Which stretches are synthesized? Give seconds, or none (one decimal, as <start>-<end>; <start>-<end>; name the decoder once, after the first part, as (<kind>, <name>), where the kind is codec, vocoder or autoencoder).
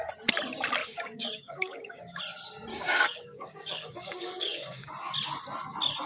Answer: 0.8-2.2 (codec, DAC); 2.7-4.9